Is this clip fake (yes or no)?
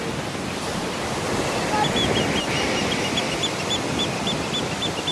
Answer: no